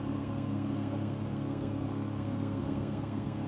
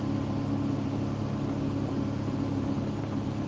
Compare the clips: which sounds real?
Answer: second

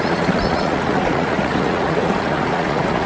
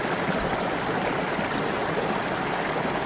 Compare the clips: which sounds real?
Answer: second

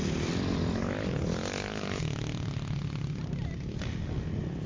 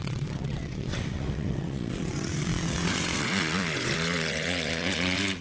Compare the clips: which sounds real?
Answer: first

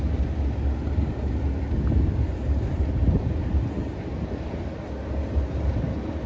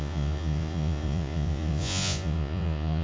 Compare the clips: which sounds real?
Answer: first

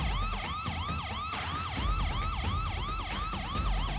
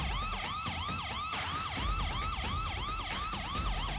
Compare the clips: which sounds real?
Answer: first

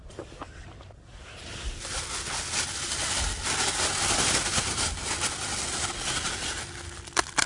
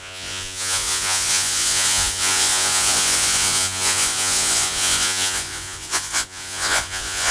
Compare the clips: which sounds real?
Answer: first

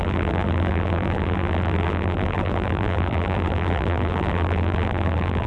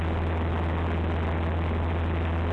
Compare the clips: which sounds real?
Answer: second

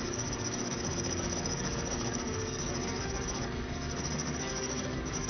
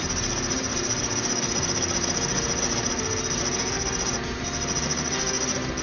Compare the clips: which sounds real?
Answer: second